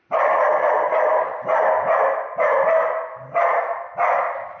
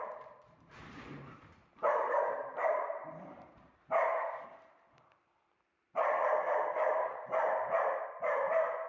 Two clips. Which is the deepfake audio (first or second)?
second